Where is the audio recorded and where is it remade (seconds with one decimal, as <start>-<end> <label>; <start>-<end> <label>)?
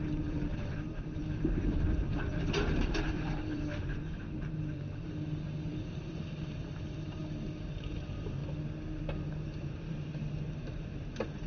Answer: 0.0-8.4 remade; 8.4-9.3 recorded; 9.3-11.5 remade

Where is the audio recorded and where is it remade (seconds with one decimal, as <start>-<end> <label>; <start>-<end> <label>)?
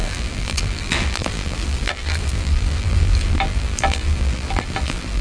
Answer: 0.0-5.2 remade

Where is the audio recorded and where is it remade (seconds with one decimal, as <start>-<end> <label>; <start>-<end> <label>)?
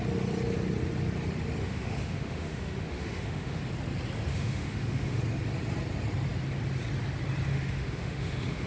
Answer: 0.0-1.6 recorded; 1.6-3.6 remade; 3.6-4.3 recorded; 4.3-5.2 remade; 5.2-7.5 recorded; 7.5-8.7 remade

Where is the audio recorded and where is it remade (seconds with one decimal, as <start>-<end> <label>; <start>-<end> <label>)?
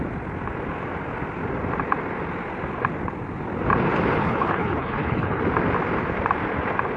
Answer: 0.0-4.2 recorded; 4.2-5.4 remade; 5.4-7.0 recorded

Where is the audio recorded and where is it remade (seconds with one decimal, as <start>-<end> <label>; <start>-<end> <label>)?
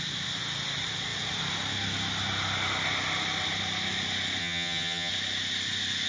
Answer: 0.0-4.4 recorded; 4.4-5.1 remade; 5.1-6.1 recorded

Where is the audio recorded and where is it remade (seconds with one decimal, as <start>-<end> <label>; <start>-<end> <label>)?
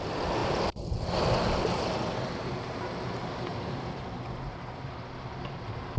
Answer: 0.0-6.0 recorded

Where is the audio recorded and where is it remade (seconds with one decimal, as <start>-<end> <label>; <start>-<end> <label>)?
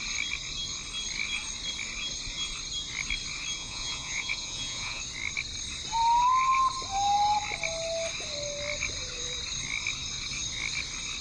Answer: 0.0-3.6 recorded; 3.6-5.0 remade; 5.0-11.2 recorded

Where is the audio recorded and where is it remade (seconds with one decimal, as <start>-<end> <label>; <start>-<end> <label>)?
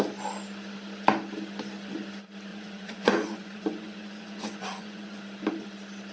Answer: 0.0-2.5 recorded; 2.5-5.2 remade; 5.2-6.1 recorded